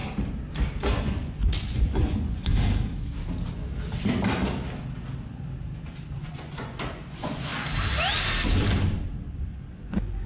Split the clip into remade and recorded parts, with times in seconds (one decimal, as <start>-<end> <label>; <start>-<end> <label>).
0.0-1.0 recorded; 1.0-2.5 remade; 2.5-6.2 recorded; 6.2-7.5 remade; 7.5-9.7 recorded; 9.7-10.3 remade